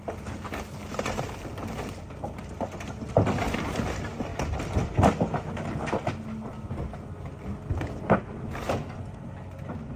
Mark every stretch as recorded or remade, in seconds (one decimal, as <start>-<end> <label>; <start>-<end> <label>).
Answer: 0.0-10.0 recorded